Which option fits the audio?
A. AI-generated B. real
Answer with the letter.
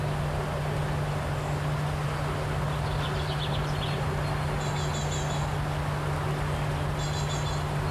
B